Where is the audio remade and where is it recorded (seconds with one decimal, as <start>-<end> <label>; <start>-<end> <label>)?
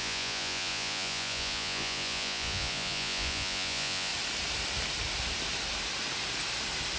0.0-4.1 remade; 4.1-7.0 recorded